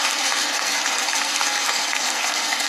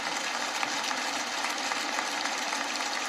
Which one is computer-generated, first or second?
first